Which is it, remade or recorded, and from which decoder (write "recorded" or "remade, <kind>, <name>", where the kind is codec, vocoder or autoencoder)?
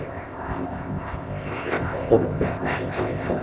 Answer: remade, codec, ZipCodec